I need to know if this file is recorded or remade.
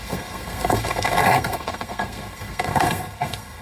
remade